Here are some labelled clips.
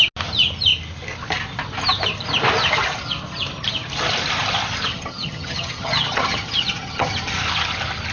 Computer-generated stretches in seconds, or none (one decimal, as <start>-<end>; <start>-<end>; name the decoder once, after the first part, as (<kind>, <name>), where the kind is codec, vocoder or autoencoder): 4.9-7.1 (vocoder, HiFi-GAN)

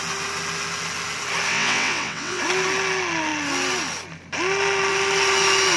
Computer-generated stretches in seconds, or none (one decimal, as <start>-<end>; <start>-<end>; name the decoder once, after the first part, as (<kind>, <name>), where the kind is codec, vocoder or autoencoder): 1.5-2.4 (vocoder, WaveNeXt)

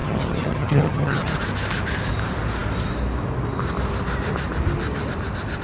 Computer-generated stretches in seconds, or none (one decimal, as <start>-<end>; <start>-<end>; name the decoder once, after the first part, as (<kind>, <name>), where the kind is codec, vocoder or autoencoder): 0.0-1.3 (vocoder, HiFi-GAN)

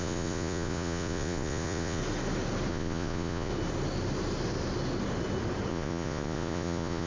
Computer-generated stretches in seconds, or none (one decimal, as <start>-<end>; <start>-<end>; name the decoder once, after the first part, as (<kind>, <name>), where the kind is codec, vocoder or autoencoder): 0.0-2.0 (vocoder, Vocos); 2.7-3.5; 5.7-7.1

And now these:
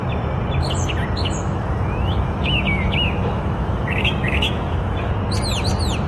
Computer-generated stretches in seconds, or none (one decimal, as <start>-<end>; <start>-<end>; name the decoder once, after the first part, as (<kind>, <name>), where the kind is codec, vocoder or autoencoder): 1.4-5.1 (autoencoder, DAC-VAE)